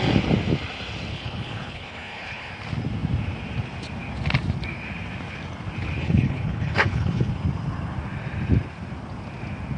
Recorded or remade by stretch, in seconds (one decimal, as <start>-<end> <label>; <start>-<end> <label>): 0.0-1.1 recorded; 1.1-2.5 remade; 2.5-6.0 recorded; 6.0-7.3 remade; 7.3-9.8 recorded